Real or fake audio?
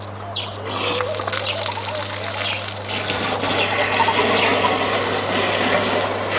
real